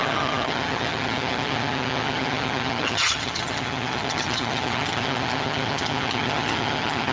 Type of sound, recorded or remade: remade